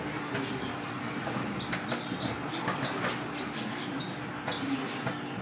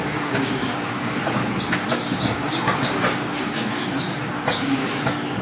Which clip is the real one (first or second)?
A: first